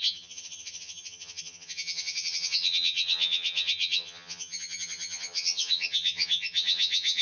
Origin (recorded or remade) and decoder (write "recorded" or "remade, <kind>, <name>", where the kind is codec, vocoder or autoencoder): remade, vocoder, HiFi-GAN